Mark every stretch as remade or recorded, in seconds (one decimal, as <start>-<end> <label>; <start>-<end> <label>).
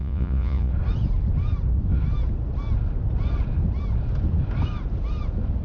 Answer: 0.0-0.7 remade; 0.7-5.6 recorded